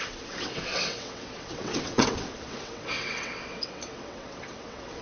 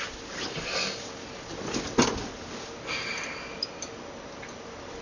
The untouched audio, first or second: second